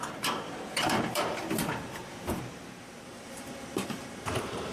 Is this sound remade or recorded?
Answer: remade